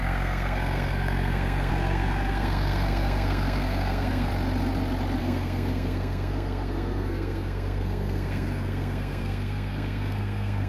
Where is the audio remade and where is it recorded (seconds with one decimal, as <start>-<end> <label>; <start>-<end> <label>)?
0.0-4.3 remade; 4.3-5.2 recorded; 5.2-10.7 remade